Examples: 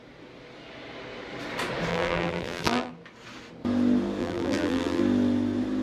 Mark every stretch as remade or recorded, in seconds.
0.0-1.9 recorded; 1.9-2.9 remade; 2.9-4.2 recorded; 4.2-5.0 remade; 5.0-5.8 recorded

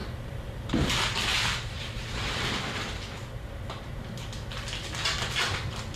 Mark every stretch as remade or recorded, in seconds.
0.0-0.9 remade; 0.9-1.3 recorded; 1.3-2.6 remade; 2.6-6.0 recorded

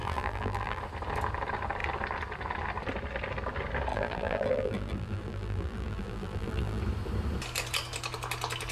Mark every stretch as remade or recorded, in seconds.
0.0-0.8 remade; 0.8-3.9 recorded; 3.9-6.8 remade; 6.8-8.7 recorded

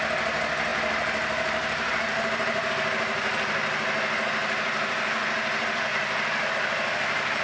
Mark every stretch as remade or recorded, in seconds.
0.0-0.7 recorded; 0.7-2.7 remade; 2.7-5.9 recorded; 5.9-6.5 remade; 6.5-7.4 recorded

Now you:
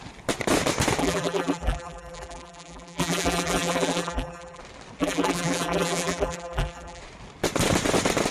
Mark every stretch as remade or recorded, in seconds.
0.0-1.0 recorded; 1.0-4.6 remade; 4.6-5.0 recorded; 5.0-7.0 remade; 7.0-8.3 recorded

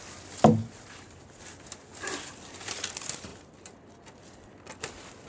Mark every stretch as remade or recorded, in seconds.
0.0-0.6 recorded; 0.6-1.2 remade; 1.2-5.3 recorded

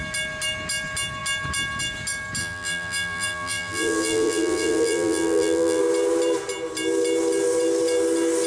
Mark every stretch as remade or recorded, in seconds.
0.0-2.4 recorded; 2.4-5.8 remade; 5.8-8.5 recorded

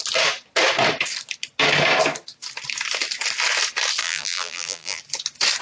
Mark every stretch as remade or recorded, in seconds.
0.0-4.0 recorded; 4.0-5.0 remade; 5.0-5.6 recorded